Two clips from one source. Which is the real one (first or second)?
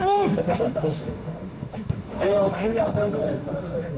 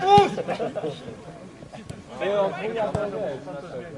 second